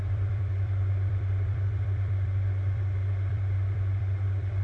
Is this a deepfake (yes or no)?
yes